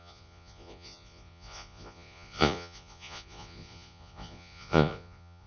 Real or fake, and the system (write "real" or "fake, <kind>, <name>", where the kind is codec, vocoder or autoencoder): fake, vocoder, Vocos